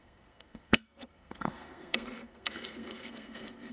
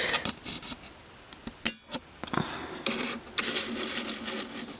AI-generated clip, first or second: first